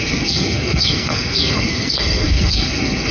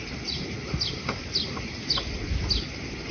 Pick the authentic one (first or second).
second